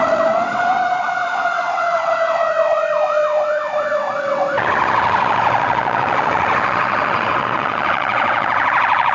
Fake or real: fake